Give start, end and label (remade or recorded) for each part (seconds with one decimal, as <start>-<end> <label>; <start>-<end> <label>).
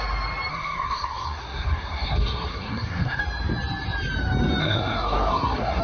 0.0-0.5 recorded; 0.5-3.2 remade; 3.2-4.6 recorded; 4.6-5.8 remade